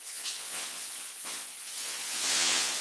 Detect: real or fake fake